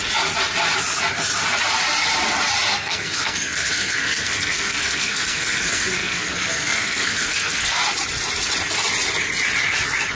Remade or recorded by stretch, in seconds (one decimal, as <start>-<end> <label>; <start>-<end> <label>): 0.0-2.7 recorded; 2.7-7.8 remade; 7.8-10.1 recorded